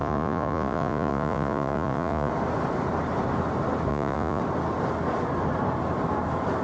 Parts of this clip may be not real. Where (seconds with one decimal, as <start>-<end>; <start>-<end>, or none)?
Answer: 0.0-2.3; 3.9-4.4

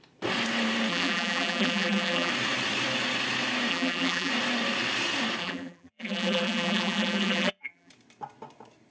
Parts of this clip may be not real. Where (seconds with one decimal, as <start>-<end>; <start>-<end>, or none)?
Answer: 0.9-2.3; 3.7-4.3; 5.4-7.9

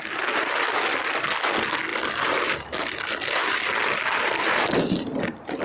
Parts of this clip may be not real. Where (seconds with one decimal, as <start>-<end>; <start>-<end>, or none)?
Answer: none